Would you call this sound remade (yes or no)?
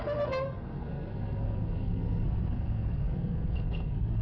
yes